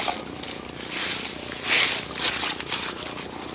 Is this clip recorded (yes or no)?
yes